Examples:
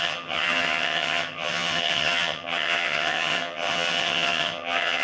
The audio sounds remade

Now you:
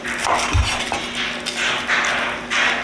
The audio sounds recorded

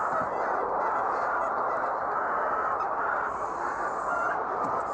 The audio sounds recorded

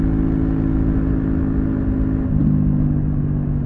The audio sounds recorded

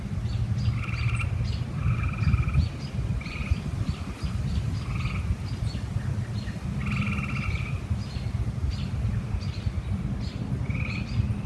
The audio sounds recorded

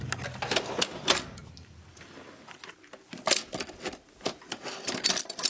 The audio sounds recorded